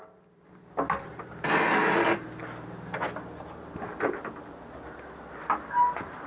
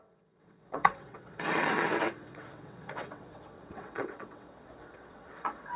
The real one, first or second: first